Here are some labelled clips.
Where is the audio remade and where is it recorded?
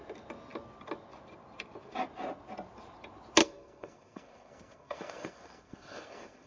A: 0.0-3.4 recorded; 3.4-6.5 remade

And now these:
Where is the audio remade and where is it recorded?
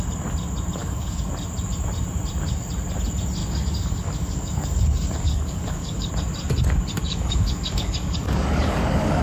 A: 0.0-0.8 recorded; 0.8-1.3 remade; 1.3-3.4 recorded; 3.4-6.1 remade; 6.1-6.9 recorded; 6.9-9.2 remade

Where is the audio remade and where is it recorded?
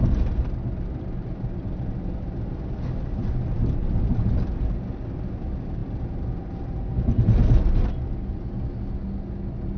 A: 0.0-9.8 recorded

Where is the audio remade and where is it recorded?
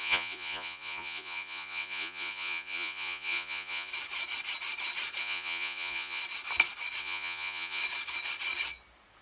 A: 0.0-3.9 remade; 3.9-5.2 recorded; 5.2-6.2 remade; 6.2-7.0 recorded; 7.0-7.8 remade; 7.8-9.2 recorded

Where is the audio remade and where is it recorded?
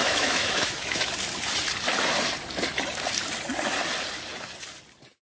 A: 0.0-1.1 remade; 1.1-5.3 recorded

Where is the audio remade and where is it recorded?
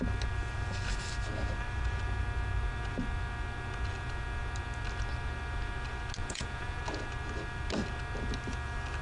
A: 0.0-6.2 recorded; 6.2-6.8 remade; 6.8-9.0 recorded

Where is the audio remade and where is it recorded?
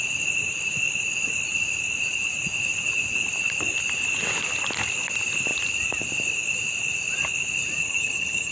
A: 0.0-7.8 recorded; 7.8-8.5 remade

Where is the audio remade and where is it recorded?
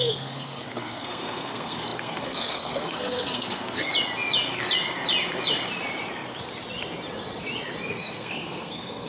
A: 0.0-3.9 remade; 3.9-7.9 recorded; 7.9-9.1 remade